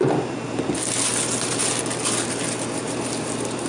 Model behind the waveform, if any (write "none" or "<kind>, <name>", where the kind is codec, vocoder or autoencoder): none